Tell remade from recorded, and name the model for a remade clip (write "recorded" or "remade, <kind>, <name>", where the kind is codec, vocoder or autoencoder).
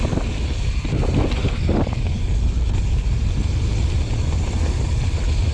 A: recorded